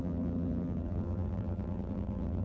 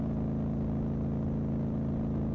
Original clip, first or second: second